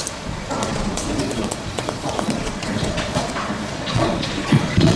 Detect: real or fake fake